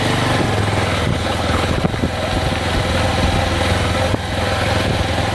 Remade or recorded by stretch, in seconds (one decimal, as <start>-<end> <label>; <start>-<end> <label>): 0.0-1.1 recorded; 1.1-1.8 remade; 1.8-5.3 recorded